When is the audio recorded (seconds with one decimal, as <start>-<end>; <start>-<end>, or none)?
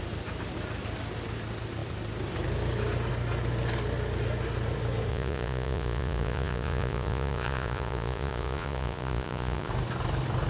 0.0-5.1; 9.7-10.5